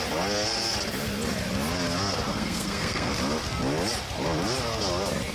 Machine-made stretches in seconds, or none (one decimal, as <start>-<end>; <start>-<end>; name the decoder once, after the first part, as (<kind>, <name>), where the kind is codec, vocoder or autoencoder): 2.3-3.1 (codec, SNAC)